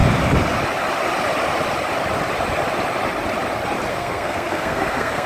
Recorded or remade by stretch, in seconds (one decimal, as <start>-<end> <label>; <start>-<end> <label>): 0.0-3.9 recorded; 3.9-5.3 remade